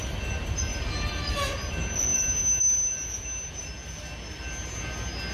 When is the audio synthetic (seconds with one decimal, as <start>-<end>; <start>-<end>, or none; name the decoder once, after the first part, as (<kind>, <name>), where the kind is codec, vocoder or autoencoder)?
none